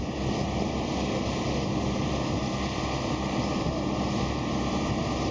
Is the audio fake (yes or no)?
no